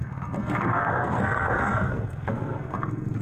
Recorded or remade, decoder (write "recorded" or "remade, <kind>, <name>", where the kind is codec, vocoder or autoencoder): remade, codec, SNAC